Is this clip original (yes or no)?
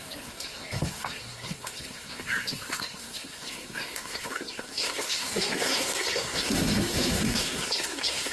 no